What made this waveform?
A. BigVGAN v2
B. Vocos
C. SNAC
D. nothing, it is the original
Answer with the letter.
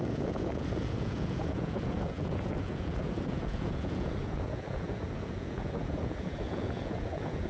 B